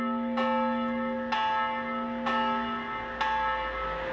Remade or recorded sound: recorded